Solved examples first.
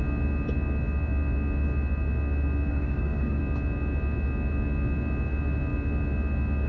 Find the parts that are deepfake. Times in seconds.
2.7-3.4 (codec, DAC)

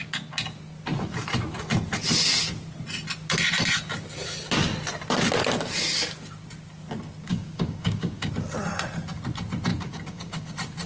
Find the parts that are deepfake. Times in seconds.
7.3-8.3 (codec, DAC); 9.7-10.5

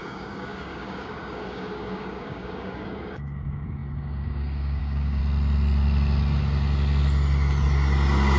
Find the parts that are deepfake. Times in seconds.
0.0-5.2 (codec, DAC)

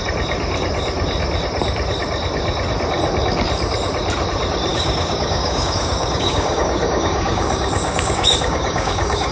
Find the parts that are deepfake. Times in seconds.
4.7-9.3 (codec, DAC)

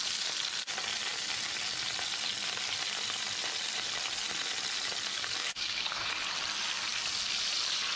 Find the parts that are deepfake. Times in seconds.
5.1-6.1 (codec, DAC)

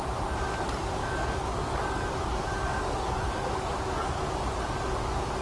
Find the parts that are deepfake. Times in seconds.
1.0-4.2 (codec, DAC)

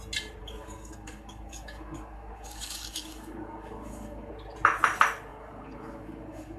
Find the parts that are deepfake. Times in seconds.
0.4-4.3 (codec, DAC); 5.3-6.6

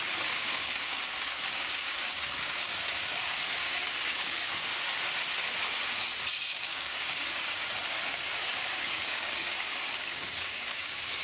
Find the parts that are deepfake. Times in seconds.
0.0-4.7 (codec, DAC); 6.5-11.2